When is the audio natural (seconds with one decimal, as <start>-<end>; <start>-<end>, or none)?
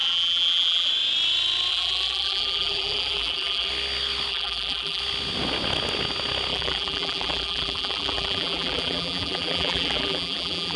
0.9-1.7; 3.7-4.3; 5.0-6.5